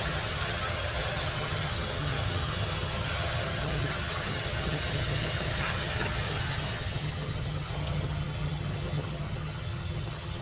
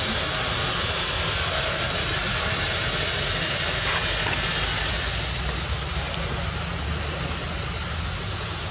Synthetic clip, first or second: first